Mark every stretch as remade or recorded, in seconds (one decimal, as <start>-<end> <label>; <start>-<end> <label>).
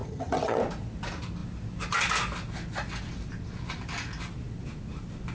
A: 0.0-0.6 remade; 0.6-5.3 recorded